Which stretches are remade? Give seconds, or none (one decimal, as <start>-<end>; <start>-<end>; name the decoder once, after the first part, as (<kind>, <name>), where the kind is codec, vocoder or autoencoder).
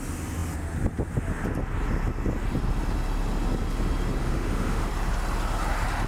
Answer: 4.2-4.9 (autoencoder, DAC-VAE)